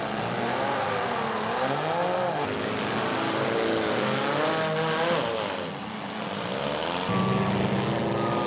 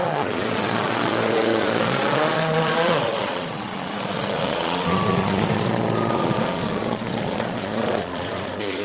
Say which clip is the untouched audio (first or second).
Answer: first